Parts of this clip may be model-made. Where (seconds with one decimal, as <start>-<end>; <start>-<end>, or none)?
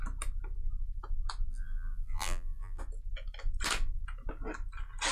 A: 1.5-2.8